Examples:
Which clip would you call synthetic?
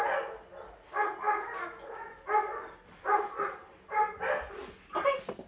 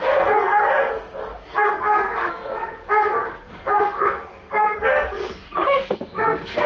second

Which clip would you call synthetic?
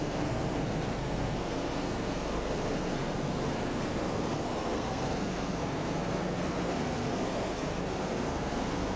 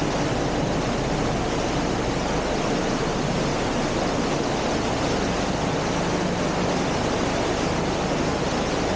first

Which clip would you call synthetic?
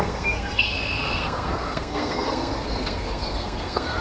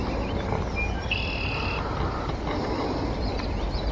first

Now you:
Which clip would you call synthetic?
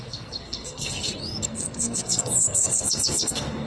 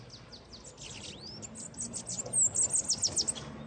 first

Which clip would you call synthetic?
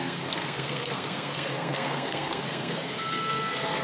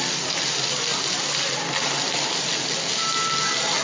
first